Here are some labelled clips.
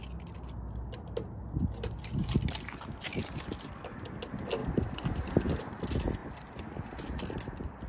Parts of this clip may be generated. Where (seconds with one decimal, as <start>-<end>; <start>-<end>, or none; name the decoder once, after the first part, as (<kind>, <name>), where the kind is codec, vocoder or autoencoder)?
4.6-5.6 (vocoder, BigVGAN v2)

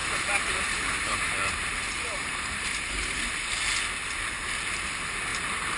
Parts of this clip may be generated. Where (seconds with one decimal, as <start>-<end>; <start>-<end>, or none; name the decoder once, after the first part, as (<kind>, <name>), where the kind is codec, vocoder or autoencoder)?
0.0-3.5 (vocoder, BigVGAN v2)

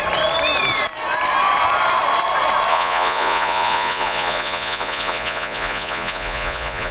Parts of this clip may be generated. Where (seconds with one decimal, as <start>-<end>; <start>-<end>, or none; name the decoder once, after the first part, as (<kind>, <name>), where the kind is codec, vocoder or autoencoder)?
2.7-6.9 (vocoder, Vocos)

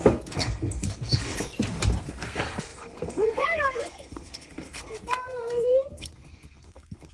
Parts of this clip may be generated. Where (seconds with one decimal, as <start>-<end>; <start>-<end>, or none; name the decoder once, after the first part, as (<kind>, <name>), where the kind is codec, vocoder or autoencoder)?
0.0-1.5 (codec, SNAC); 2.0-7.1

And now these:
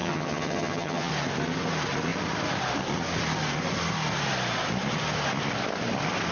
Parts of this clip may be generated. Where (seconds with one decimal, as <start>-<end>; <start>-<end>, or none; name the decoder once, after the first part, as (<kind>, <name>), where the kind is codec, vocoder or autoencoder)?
0.0-1.1 (vocoder, HiFi-GAN)